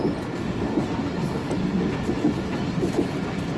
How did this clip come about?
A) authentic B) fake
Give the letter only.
A